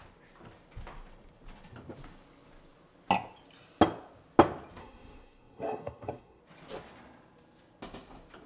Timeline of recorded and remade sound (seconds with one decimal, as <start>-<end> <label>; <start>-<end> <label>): 0.0-4.8 recorded; 4.8-6.4 remade; 6.4-8.5 recorded